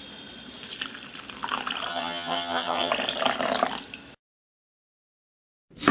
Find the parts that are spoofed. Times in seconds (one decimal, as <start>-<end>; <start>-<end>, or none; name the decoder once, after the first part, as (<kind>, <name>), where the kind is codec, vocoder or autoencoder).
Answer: 1.9-2.9 (vocoder, HiFi-GAN)